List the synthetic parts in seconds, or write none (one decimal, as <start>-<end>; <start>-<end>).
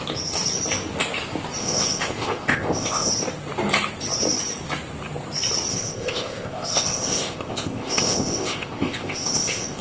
1.6-3.1; 5.7-9.8